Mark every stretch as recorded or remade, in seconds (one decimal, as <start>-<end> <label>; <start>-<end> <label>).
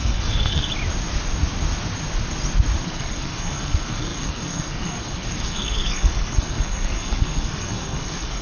0.0-0.7 remade; 0.7-2.8 recorded; 2.8-8.4 remade